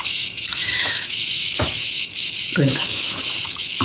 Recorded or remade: remade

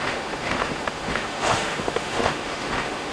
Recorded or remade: remade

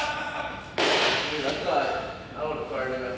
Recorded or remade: remade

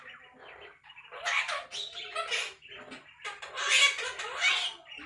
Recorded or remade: recorded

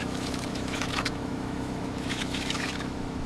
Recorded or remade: remade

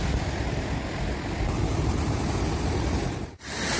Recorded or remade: recorded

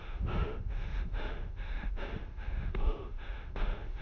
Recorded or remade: remade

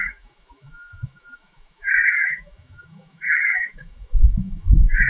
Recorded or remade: remade